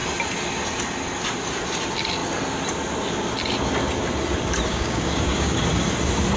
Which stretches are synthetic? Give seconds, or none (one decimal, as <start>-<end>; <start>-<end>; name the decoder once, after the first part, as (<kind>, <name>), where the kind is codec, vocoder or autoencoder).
4.7-5.6 (codec, DAC)